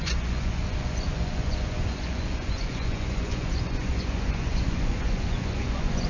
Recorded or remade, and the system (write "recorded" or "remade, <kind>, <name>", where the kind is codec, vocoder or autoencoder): remade, vocoder, Vocos